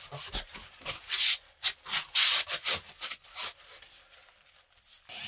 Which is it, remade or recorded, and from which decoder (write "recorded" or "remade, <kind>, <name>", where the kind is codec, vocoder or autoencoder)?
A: recorded